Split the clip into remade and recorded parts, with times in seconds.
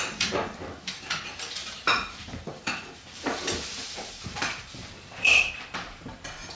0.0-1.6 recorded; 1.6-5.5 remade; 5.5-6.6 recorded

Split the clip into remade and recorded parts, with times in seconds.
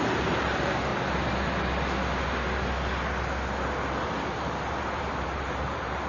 0.0-0.9 remade; 0.9-4.6 recorded; 4.6-6.1 remade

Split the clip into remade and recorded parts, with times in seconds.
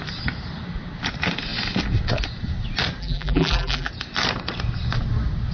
0.0-3.0 recorded; 3.0-3.9 remade; 3.9-5.5 recorded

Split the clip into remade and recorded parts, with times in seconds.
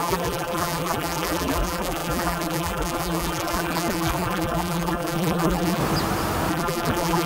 0.0-5.8 remade; 5.8-6.5 recorded; 6.5-7.3 remade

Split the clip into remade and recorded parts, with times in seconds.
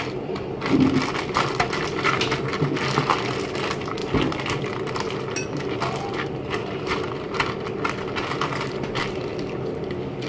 0.0-9.3 recorded; 9.3-9.9 remade; 9.9-10.3 recorded